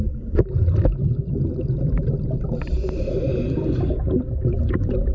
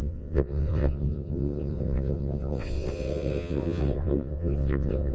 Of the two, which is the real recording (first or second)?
first